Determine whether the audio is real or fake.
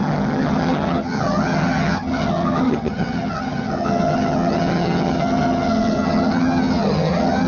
fake